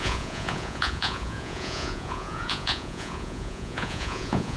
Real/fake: fake